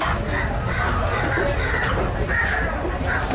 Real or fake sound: real